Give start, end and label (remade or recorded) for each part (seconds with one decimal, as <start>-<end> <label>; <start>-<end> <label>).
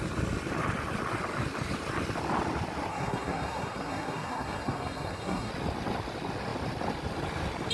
0.0-2.9 recorded; 2.9-5.5 remade; 5.5-7.7 recorded